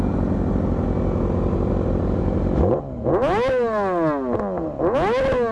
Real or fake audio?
real